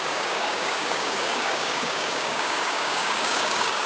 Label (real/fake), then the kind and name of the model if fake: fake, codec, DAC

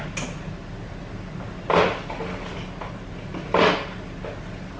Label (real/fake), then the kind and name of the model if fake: real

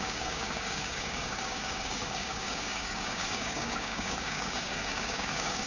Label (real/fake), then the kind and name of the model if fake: fake, codec, DAC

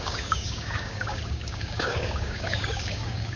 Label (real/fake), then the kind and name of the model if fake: fake, codec, DAC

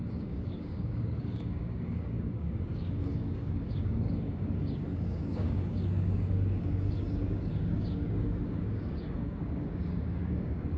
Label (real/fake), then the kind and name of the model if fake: fake, codec, DAC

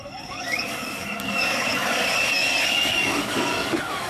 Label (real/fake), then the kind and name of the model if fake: fake, codec, DAC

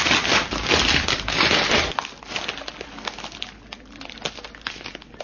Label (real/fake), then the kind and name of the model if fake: real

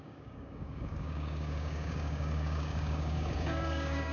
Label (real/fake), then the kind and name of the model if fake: fake, codec, DAC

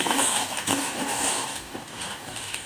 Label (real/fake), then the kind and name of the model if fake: fake, codec, DAC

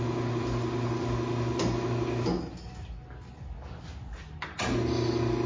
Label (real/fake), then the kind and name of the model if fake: real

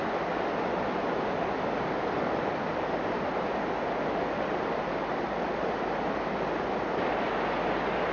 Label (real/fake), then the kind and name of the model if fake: real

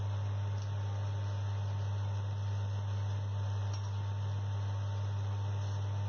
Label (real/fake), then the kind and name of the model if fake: real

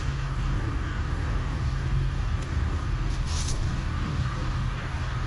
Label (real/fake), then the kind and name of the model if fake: fake, codec, DAC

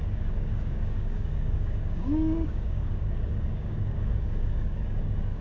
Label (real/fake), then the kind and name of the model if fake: fake, codec, DAC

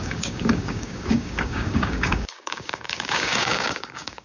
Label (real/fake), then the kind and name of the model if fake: fake, codec, DAC